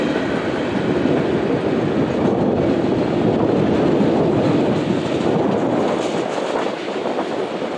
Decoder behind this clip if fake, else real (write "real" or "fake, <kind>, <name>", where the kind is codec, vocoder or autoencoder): real